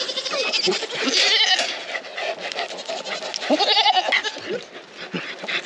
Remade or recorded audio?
recorded